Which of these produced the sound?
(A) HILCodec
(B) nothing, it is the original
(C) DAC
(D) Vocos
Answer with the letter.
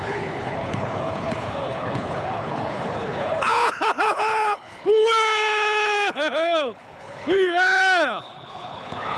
A